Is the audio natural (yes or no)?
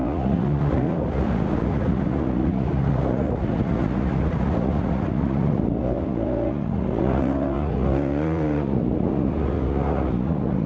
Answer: no